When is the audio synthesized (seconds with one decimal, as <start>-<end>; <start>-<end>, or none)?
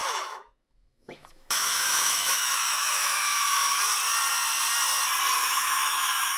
0.0-3.8; 5.4-6.4